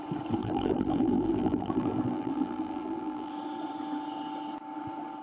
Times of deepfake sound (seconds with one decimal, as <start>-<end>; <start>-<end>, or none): 0.4-3.3

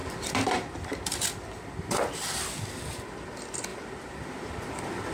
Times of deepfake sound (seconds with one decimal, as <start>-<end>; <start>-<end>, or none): 0.0-2.8; 3.7-4.5

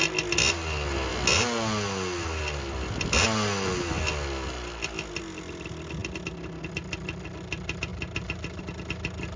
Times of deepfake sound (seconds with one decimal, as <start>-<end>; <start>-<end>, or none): none

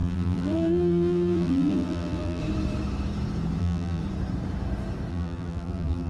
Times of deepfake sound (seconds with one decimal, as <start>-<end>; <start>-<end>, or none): 0.0-2.4; 3.6-4.0; 5.1-6.1